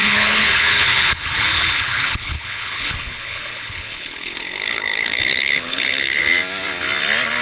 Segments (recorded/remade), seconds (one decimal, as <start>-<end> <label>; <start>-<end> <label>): 0.0-6.2 remade; 6.2-7.4 recorded